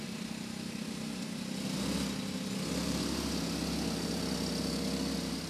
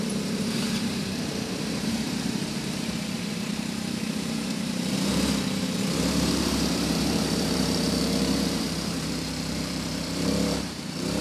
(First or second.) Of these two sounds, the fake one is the second